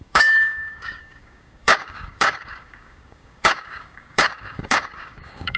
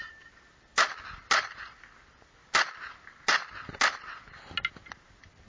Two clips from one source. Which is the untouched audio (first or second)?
second